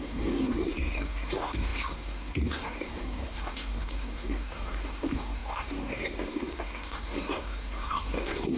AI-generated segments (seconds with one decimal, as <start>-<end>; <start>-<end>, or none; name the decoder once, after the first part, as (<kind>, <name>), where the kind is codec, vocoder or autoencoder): 0.0-8.6 (codec, SNAC)